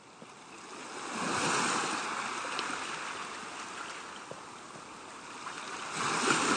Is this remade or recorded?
recorded